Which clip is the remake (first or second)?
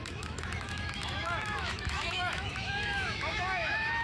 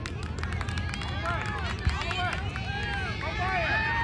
first